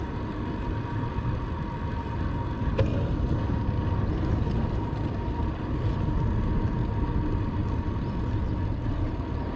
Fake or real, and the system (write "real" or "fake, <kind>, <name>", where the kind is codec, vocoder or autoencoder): real